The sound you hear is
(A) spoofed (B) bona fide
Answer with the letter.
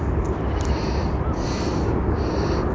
B